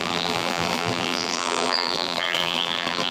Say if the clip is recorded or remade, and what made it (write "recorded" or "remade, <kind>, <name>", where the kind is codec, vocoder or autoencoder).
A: remade, vocoder, BigVGAN v2